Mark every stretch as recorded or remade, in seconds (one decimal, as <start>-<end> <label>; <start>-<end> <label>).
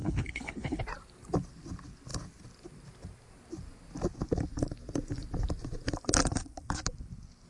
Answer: 0.0-0.8 remade; 0.8-7.5 recorded